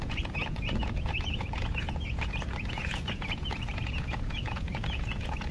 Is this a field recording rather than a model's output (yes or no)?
no